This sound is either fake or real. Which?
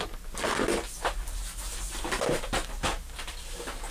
real